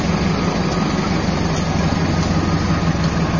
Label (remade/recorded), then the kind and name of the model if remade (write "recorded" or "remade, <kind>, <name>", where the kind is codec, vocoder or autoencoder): recorded